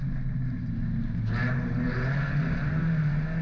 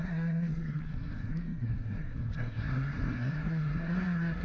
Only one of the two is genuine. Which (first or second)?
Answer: first